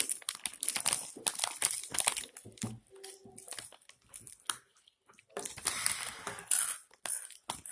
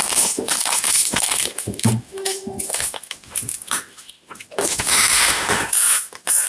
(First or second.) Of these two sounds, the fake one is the second